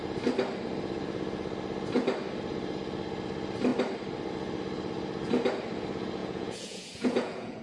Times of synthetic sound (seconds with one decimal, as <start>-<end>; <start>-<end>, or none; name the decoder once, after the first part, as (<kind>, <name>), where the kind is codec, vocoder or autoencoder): 6.2-7.6 (vocoder, Vocos)